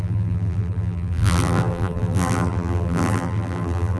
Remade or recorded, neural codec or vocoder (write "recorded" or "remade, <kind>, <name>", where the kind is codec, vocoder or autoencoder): remade, vocoder, BigVGAN v2